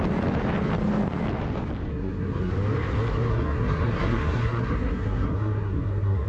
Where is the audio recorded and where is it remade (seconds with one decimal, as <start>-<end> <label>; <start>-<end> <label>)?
0.0-1.9 recorded; 1.9-2.5 remade; 2.5-3.3 recorded; 3.3-6.3 remade